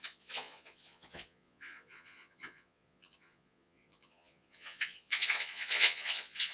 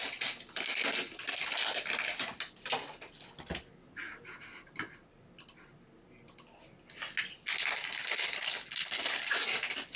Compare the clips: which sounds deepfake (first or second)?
first